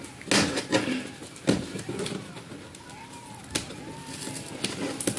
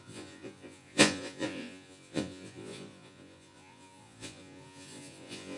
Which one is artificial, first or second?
second